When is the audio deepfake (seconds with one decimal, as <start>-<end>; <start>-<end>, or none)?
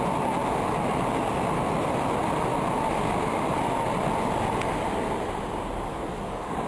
5.9-6.7